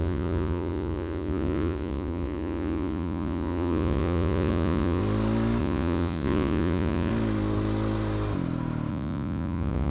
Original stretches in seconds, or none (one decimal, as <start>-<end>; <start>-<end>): 5.0-5.6; 7.1-8.9